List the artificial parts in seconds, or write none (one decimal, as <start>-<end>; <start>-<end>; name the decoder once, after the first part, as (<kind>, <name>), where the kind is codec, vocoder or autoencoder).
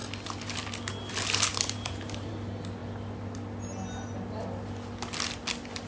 1.5-2.3 (vocoder, BigVGAN v2)